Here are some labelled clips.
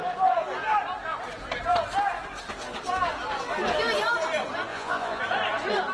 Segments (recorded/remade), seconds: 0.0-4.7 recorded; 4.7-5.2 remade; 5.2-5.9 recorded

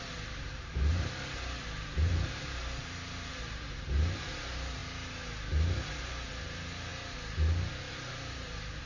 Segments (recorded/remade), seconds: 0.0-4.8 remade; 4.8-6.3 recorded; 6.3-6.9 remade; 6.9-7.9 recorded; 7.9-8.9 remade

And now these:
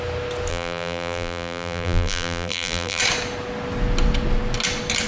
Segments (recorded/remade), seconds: 0.0-0.5 recorded; 0.5-3.0 remade; 3.0-5.1 recorded

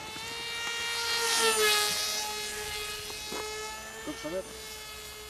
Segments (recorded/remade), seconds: 0.0-5.3 recorded

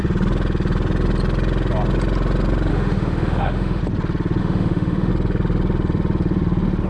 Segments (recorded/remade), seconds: 0.0-2.7 recorded; 2.7-3.8 remade; 3.8-4.4 recorded; 4.4-5.1 remade; 5.1-6.9 recorded

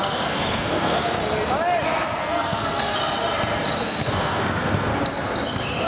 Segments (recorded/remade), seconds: 0.0-1.2 remade; 1.2-2.2 recorded; 2.2-3.0 remade; 3.0-3.8 recorded; 3.8-4.9 remade; 4.9-5.9 recorded

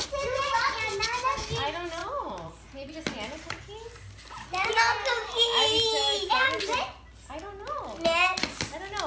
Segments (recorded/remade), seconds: 0.0-2.0 recorded; 2.0-2.9 remade; 2.9-9.1 recorded

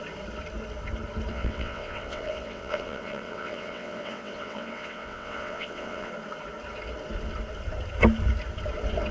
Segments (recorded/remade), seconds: 0.0-1.3 recorded; 1.3-6.1 remade; 6.1-9.1 recorded